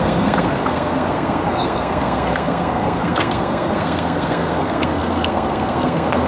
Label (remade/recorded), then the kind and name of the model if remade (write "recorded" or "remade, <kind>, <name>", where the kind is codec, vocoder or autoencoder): remade, codec, SNAC